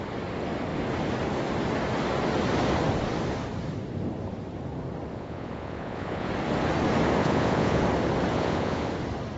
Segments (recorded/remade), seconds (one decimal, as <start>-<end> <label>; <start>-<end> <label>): 0.0-5.1 recorded; 5.1-6.3 remade; 6.3-7.2 recorded; 7.2-7.8 remade; 7.8-8.3 recorded; 8.3-8.9 remade; 8.9-9.4 recorded